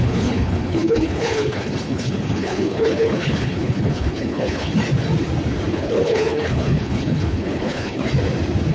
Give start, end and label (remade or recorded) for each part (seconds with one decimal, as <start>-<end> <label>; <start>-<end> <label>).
0.0-4.7 remade; 4.7-5.7 recorded; 5.7-8.0 remade; 8.0-8.7 recorded